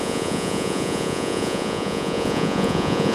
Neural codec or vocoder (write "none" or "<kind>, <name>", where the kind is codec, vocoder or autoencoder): vocoder, Vocos